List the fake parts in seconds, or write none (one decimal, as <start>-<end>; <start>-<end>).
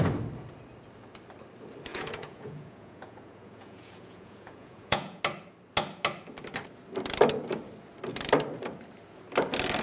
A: 1.9-5.2